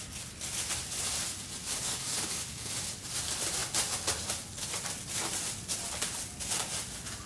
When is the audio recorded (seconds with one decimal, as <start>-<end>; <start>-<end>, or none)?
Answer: 0.0-1.6; 2.7-7.3